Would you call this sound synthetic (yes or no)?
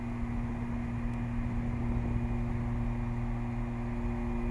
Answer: no